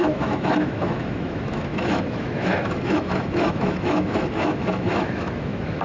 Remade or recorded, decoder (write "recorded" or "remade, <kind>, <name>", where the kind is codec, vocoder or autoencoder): remade, autoencoder, DAC-VAE